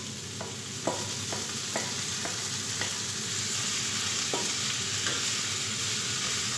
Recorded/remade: recorded